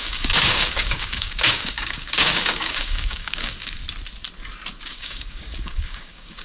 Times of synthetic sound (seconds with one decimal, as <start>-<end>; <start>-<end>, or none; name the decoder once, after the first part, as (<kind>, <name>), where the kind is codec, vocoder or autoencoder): 0.0-3.8 (codec, DAC); 4.8-6.4